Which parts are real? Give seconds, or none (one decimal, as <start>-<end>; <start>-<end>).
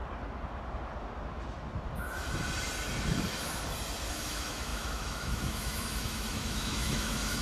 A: 0.0-4.1